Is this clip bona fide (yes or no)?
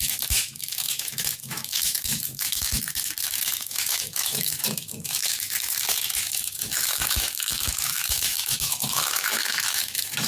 no